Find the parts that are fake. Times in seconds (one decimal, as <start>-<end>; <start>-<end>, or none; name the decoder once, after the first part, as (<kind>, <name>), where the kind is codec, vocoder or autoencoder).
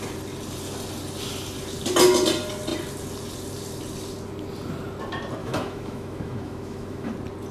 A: 5.4-7.1 (autoencoder, DAC-VAE)